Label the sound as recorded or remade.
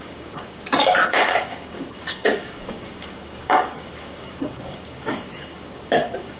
remade